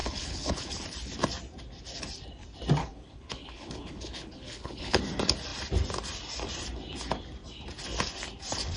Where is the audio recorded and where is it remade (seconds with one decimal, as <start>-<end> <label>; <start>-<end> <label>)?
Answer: 0.0-0.7 remade; 0.7-2.8 recorded; 2.8-5.0 remade; 5.0-8.8 recorded